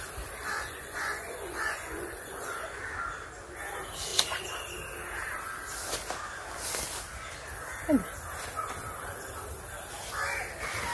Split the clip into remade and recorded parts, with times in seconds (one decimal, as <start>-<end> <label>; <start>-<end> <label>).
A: 0.0-0.4 recorded; 0.4-2.8 remade; 2.8-10.9 recorded